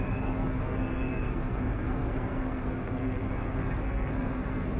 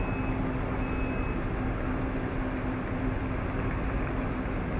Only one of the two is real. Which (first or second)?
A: second